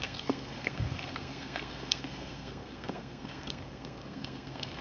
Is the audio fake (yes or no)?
yes